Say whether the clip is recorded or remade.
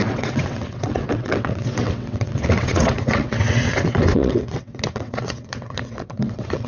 remade